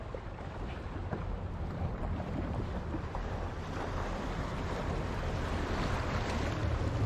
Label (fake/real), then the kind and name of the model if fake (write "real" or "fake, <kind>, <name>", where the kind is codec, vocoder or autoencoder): fake, vocoder, BigVGAN v2